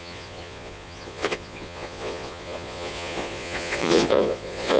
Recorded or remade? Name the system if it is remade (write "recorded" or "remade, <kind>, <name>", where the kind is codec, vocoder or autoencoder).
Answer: remade, vocoder, Vocos